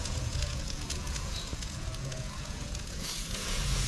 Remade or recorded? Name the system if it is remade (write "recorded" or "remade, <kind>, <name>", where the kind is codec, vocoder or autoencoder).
remade, vocoder, Vocos